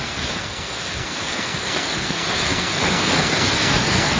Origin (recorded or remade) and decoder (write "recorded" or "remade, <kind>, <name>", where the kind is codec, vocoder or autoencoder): remade, codec, SNAC